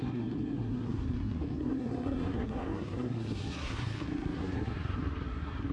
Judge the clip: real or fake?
fake